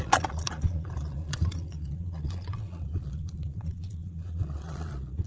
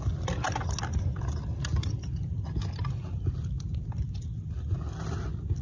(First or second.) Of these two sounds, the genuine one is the second